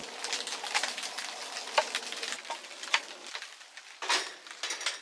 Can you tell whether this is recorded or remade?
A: recorded